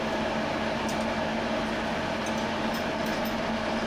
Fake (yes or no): no